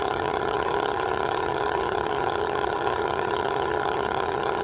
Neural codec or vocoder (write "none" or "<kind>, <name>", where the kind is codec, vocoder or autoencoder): vocoder, HiFi-GAN